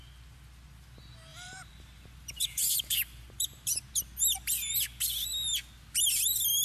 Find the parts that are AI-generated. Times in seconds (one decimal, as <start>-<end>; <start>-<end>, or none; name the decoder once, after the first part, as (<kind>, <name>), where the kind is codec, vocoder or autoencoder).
1.3-3.9 (vocoder, BigVGAN v2)